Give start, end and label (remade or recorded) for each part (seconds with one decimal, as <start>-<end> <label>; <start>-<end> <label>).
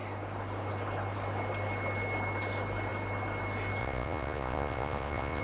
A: 0.0-3.8 recorded; 3.8-5.4 remade